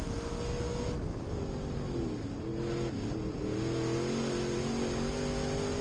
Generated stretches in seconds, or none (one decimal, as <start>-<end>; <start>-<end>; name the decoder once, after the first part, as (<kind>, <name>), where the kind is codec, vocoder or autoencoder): none